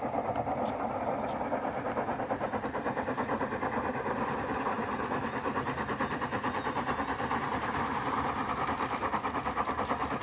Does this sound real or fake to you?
real